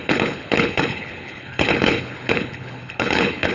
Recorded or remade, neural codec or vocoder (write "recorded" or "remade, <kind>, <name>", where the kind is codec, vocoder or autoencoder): remade, codec, HILCodec